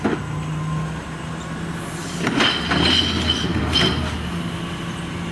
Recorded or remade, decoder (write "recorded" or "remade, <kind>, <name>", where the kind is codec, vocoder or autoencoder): recorded